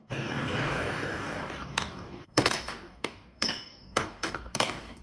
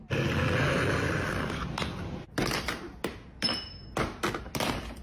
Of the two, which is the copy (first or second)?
first